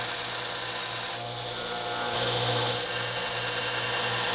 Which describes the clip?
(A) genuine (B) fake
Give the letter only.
A